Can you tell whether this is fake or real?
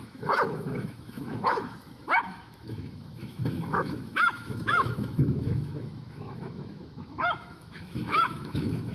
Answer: fake